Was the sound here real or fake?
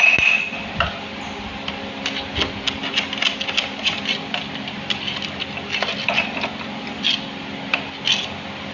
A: real